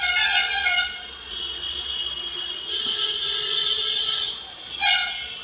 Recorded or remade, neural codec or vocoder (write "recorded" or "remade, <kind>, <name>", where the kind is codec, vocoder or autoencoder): remade, vocoder, Vocos